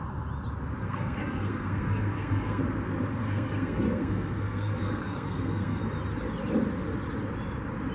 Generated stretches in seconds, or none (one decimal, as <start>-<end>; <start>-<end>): 0.8-2.6; 3.2-5.8